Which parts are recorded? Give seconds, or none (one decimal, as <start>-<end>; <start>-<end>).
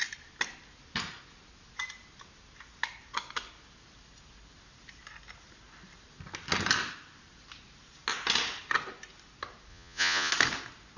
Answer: 0.0-9.7; 10.3-11.0